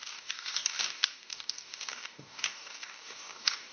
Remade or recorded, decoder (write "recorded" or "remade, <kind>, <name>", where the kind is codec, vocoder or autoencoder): remade, codec, DAC